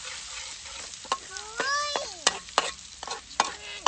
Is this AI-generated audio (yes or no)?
no